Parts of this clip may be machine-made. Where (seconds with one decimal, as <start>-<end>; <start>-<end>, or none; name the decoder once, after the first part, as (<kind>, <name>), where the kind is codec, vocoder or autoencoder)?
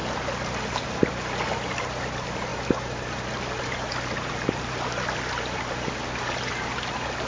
none